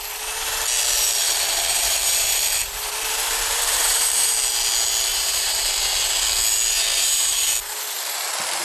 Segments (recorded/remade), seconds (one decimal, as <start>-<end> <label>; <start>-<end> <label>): 0.0-1.2 recorded; 1.2-4.3 remade; 4.3-5.1 recorded; 5.1-5.8 remade; 5.8-6.9 recorded; 6.9-7.5 remade; 7.5-8.6 recorded